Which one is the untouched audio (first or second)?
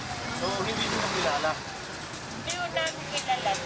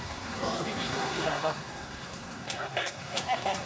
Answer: first